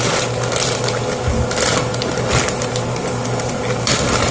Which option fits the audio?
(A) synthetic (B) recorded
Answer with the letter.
B